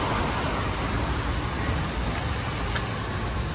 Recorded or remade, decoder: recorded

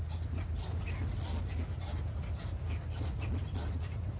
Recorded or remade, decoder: recorded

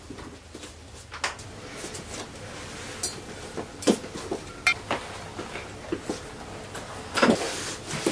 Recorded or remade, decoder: recorded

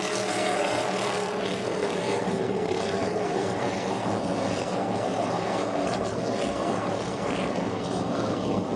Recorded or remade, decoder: remade, codec, SNAC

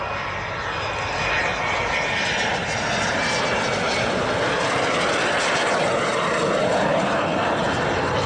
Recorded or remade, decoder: recorded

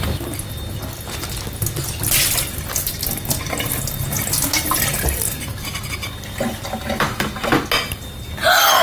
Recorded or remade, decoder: recorded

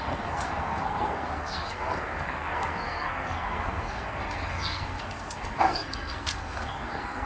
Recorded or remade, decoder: remade, codec, SNAC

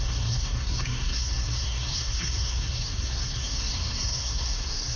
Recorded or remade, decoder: remade, codec, SNAC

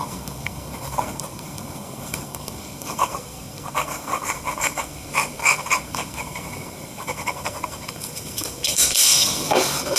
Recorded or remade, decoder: remade, codec, SNAC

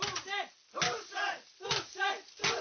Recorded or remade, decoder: recorded